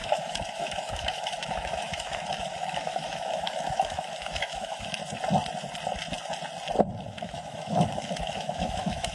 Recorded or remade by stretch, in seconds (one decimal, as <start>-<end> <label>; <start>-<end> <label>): 0.0-5.0 remade; 5.0-7.1 recorded; 7.1-9.1 remade